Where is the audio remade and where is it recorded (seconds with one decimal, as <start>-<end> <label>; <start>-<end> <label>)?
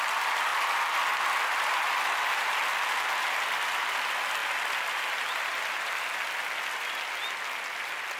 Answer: 0.0-8.2 recorded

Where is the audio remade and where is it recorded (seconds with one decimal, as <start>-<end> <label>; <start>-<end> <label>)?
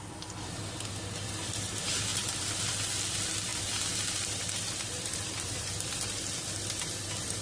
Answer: 0.0-2.1 recorded; 2.1-2.7 remade; 2.7-3.5 recorded; 3.5-5.7 remade; 5.7-7.4 recorded